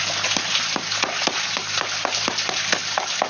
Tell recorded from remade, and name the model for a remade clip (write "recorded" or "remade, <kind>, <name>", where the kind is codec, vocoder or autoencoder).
recorded